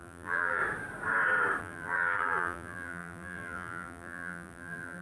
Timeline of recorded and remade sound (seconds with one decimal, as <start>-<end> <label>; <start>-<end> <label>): 0.0-0.6 remade; 0.6-1.6 recorded; 1.6-5.0 remade